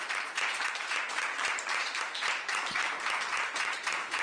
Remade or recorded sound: remade